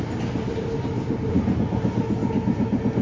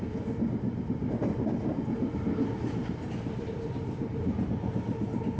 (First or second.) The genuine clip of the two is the first